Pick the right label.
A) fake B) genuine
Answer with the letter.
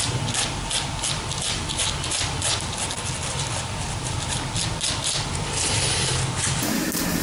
B